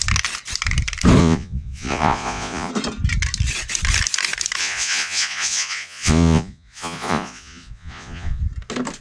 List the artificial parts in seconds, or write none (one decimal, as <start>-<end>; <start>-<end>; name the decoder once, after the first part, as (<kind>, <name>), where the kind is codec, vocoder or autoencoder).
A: 1.2-2.7 (vocoder, Vocos); 4.6-8.4